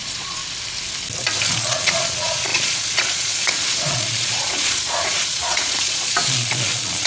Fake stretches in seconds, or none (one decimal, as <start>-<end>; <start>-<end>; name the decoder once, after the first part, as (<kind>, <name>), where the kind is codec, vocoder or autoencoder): 0.0-0.4 (vocoder, Vocos); 1.5-7.1

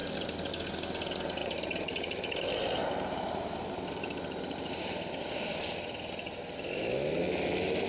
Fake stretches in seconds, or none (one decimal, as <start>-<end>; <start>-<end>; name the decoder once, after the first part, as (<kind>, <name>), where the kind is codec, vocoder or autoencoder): 1.4-4.8 (vocoder, BigVGAN v2)

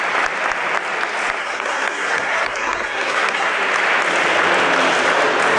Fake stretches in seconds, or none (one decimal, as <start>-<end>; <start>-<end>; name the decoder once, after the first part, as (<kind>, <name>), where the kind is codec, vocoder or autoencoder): 1.4-3.5 (codec, SNAC)

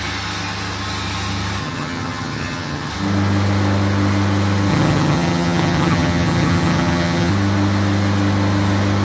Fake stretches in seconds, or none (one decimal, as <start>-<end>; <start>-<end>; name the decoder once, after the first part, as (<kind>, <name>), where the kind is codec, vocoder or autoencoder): 1.6-2.9 (vocoder, HiFi-GAN); 4.7-7.3